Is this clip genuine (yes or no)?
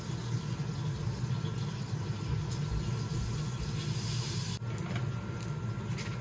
yes